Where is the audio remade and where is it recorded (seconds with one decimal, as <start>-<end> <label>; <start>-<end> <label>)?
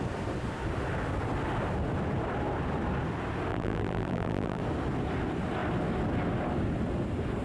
0.0-3.5 recorded; 3.5-4.6 remade; 4.6-7.4 recorded